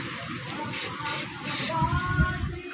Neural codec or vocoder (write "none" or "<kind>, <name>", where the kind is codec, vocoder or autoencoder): none